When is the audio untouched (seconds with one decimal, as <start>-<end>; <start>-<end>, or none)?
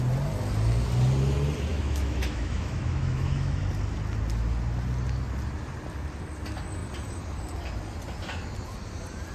0.0-1.7; 3.6-9.3